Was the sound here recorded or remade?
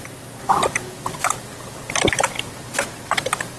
recorded